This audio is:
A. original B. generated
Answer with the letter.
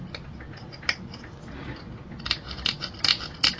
A